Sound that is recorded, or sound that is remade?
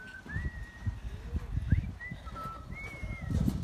recorded